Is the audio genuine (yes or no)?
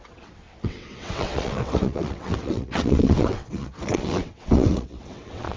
no